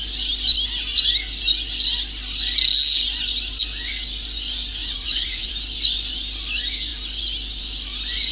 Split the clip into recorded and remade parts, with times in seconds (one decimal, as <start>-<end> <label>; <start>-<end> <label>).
0.0-4.8 recorded; 4.8-5.5 remade; 5.5-8.3 recorded